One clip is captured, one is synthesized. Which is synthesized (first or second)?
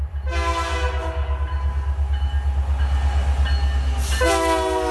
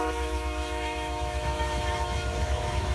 second